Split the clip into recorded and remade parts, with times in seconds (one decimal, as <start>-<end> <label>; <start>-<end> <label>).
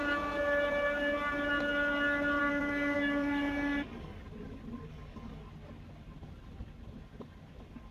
0.0-2.4 recorded; 2.4-4.2 remade; 4.2-4.9 recorded; 4.9-5.4 remade; 5.4-7.9 recorded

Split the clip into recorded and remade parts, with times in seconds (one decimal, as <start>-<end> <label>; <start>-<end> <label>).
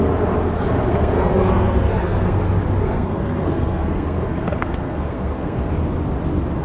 0.0-0.9 recorded; 0.9-2.4 remade; 2.4-2.8 recorded; 2.8-5.7 remade; 5.7-6.6 recorded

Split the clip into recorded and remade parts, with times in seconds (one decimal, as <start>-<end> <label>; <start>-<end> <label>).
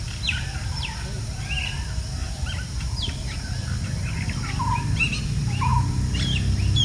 0.0-6.8 recorded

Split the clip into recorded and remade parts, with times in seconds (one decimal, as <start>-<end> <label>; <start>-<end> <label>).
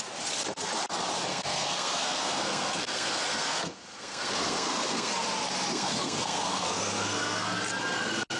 0.0-1.3 recorded; 1.3-5.1 remade; 5.1-5.7 recorded; 5.7-7.6 remade; 7.6-8.4 recorded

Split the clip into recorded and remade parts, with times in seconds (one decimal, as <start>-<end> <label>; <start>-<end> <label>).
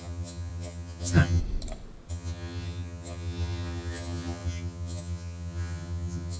0.0-1.4 remade; 1.4-2.1 recorded; 2.1-6.4 remade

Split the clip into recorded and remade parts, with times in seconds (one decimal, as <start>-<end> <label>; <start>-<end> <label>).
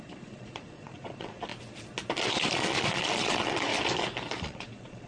0.0-1.5 remade; 1.5-2.3 recorded; 2.3-3.7 remade; 3.7-4.4 recorded; 4.4-5.1 remade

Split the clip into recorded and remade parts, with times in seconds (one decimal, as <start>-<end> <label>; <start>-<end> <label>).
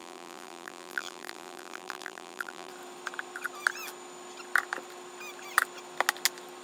0.0-2.7 remade; 2.7-6.6 recorded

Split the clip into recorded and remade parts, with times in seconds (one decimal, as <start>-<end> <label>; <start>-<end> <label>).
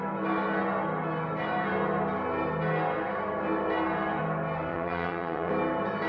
0.0-4.7 recorded; 4.7-5.5 remade; 5.5-6.1 recorded